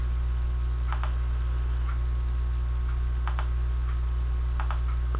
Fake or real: real